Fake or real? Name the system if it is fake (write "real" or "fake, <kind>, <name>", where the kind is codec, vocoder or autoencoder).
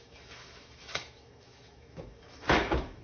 fake, autoencoder, DAC-VAE